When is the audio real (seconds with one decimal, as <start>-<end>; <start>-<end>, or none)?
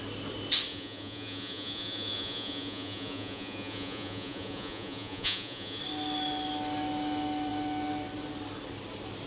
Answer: 0.0-0.7; 5.8-9.3